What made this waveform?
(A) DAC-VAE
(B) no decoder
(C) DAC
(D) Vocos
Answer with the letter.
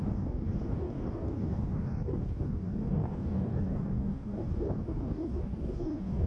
C